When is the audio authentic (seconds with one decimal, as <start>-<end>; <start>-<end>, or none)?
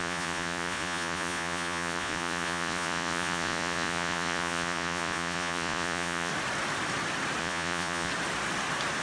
6.3-7.4; 8.1-9.0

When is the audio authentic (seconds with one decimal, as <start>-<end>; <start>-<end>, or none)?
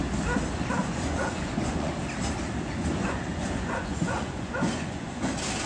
0.0-0.8; 1.9-2.7; 5.3-5.7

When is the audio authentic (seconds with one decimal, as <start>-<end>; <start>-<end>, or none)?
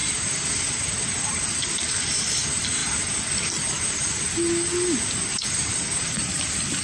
0.0-6.8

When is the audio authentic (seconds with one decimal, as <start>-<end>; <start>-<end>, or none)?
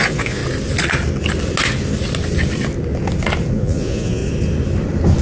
0.4-3.5; 4.2-5.2